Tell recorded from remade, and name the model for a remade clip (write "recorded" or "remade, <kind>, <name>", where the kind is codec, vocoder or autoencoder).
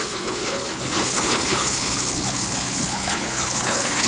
remade, codec, HILCodec